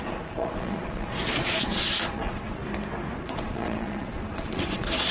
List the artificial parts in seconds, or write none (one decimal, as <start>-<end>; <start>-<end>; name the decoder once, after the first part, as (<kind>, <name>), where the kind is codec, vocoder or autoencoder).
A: 0.0-2.6 (vocoder, Vocos); 3.2-5.1